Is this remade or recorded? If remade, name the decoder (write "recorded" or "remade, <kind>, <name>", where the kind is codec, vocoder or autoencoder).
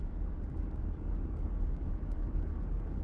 remade, codec, DAC